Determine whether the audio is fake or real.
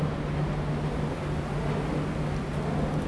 real